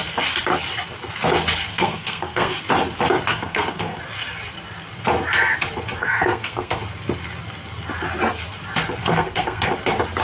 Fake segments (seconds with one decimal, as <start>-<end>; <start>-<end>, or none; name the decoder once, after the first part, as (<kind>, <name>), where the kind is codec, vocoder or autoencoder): 1.7-2.6 (codec, SNAC); 3.3-4.0; 6.0-6.8; 9.0-9.7